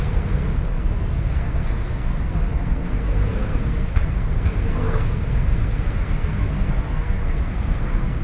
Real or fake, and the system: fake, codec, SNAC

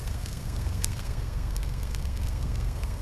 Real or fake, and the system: fake, codec, SNAC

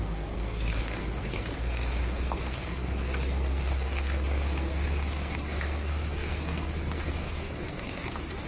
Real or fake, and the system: fake, codec, SNAC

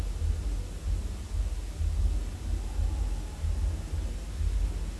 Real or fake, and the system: real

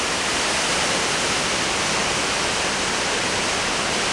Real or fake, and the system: real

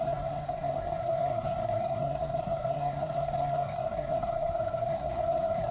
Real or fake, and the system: fake, codec, SNAC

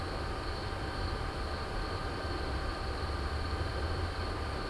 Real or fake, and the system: real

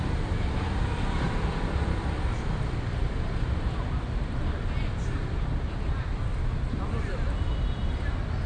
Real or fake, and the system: real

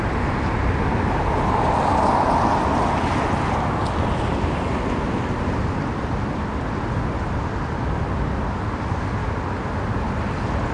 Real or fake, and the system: real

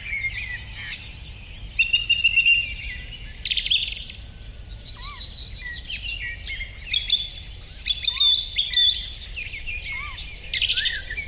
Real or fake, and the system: real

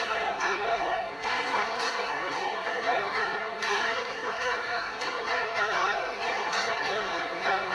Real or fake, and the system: fake, codec, SNAC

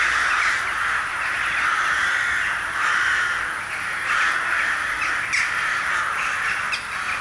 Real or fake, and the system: real